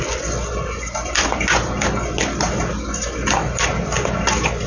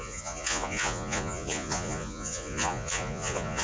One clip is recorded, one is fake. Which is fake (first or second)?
second